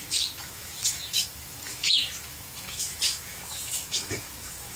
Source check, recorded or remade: remade